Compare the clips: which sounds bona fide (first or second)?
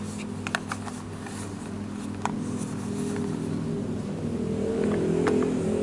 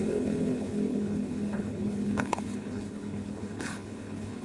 first